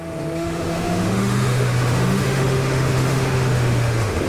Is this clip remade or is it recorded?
remade